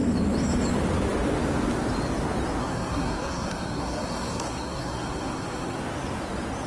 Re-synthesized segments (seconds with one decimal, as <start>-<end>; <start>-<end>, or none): 2.6-5.8